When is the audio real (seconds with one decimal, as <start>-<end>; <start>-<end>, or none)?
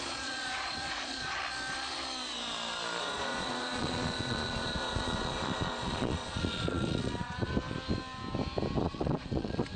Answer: 1.4-3.0; 7.5-8.8